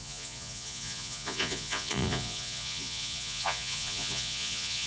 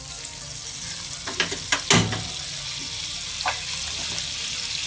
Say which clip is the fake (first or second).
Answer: first